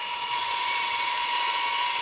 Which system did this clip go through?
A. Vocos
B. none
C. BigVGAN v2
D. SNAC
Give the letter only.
A